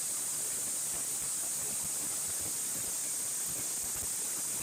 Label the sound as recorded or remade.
recorded